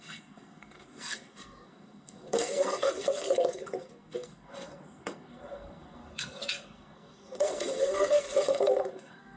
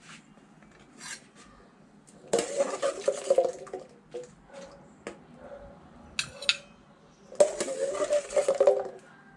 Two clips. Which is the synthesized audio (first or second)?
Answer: first